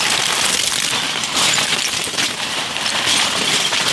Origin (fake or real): fake